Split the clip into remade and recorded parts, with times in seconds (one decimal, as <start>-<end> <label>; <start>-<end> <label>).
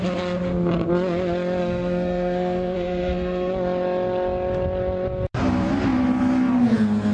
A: 0.0-1.6 recorded; 1.6-3.5 remade; 3.5-7.1 recorded